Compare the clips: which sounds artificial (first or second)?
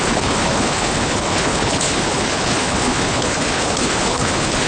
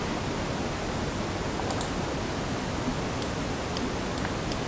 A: first